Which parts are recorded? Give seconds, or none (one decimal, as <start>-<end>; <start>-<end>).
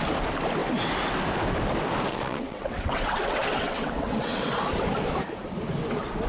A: 0.0-2.1; 4.4-6.3